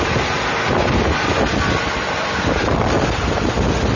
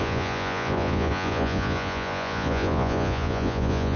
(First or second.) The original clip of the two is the first